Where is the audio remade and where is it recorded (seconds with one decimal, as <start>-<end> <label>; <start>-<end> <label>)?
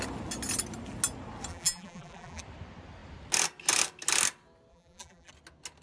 0.0-1.5 recorded; 1.5-2.4 remade; 2.4-4.7 recorded; 4.7-5.3 remade; 5.3-5.8 recorded